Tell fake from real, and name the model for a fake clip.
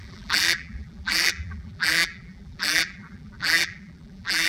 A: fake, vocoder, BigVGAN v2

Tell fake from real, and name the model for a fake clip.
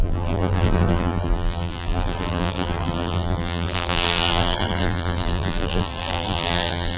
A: fake, vocoder, BigVGAN v2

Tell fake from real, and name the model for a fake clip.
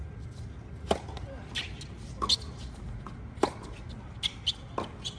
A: real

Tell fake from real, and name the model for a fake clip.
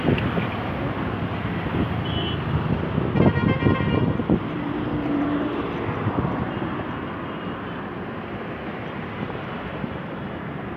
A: real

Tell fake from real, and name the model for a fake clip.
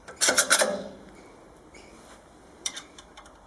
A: fake, vocoder, BigVGAN v2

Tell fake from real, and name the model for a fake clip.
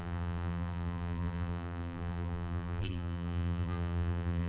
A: fake, vocoder, BigVGAN v2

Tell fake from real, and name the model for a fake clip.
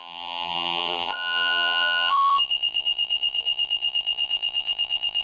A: fake, vocoder, BigVGAN v2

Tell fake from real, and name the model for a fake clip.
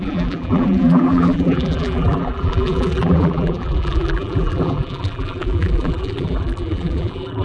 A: fake, vocoder, BigVGAN v2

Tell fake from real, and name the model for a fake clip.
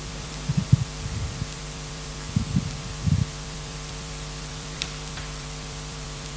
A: fake, vocoder, BigVGAN v2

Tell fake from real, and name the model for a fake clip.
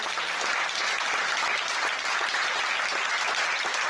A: real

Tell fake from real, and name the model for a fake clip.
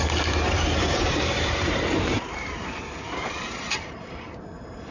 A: fake, vocoder, BigVGAN v2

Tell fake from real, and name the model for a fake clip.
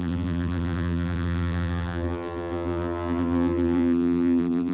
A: fake, vocoder, BigVGAN v2